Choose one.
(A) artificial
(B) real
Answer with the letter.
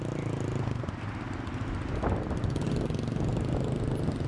B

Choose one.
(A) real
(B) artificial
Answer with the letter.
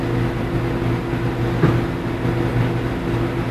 A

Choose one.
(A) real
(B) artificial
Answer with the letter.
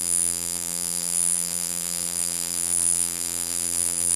B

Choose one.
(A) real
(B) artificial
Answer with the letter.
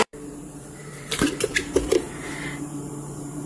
B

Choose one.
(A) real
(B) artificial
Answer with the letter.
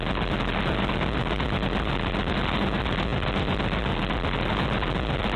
A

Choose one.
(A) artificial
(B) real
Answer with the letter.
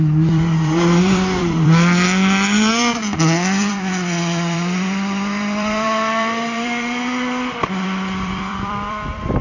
A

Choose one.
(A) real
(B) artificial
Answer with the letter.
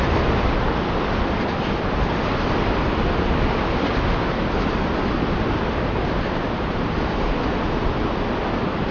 A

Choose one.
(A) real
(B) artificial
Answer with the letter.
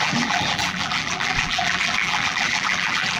B